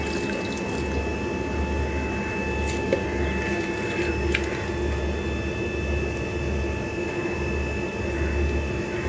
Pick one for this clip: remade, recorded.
recorded